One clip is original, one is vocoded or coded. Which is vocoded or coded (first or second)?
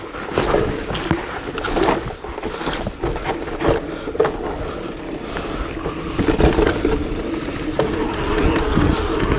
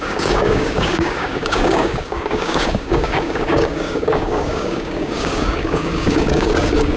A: second